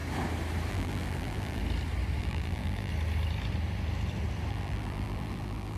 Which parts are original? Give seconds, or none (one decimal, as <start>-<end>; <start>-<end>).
0.0-0.7; 1.6-2.2; 2.9-4.5